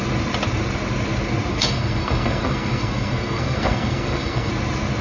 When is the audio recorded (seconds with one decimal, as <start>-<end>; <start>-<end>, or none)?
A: 0.0-1.5; 4.5-5.0